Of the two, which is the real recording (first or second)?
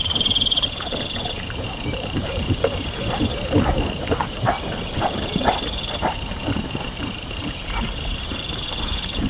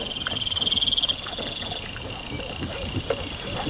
second